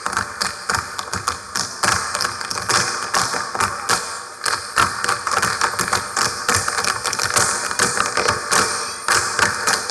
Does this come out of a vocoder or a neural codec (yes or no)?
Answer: no